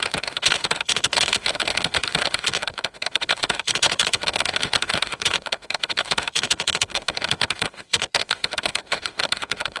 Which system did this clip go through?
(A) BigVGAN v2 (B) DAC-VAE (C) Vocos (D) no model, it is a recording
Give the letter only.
B